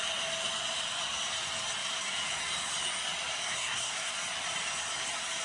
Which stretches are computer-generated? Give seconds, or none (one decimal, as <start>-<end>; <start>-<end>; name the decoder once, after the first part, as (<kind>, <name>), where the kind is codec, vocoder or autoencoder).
3.4-4.1 (codec, SNAC)